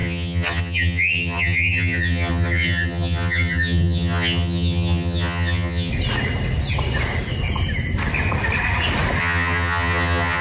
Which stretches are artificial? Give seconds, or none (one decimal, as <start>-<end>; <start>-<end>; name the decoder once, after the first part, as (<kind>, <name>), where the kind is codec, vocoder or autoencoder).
0.0-5.9 (vocoder, HiFi-GAN); 9.2-10.4